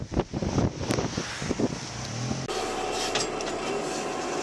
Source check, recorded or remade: recorded